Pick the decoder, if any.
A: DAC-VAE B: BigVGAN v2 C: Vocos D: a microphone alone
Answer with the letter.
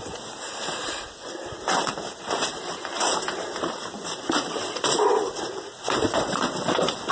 B